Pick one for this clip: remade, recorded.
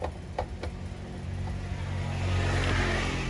recorded